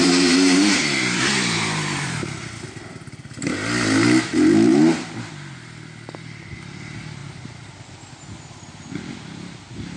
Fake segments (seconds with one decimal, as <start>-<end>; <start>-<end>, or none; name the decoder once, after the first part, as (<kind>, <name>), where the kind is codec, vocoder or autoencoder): 0.0-2.4 (vocoder, BigVGAN v2); 4.7-5.3